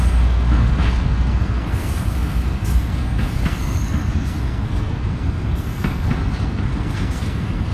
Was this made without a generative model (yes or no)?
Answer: no